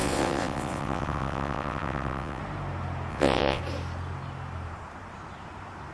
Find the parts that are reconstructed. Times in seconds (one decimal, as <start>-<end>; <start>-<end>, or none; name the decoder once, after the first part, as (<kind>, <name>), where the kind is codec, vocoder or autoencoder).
0.0-2.4 (vocoder, WaveNeXt); 3.1-3.6